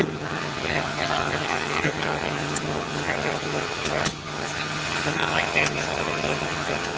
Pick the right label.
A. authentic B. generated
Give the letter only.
B